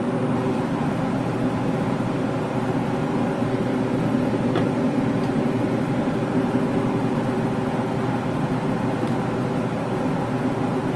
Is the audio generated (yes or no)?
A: no